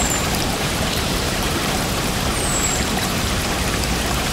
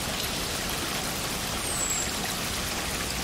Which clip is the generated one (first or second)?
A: first